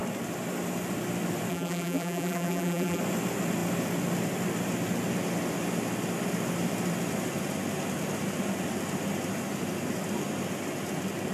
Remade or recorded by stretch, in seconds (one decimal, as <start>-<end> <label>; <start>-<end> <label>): 0.0-1.5 recorded; 1.5-3.0 remade; 3.0-11.3 recorded